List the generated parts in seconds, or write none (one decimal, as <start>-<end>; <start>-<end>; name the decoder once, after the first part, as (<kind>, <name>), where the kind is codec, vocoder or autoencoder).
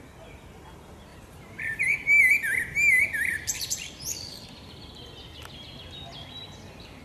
1.1-2.3 (vocoder, BigVGAN v2); 3.3-4.4; 5.2-5.8